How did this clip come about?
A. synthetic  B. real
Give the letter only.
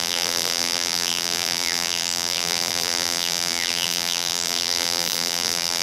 A